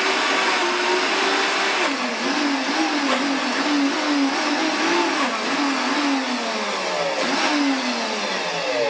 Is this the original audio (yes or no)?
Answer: yes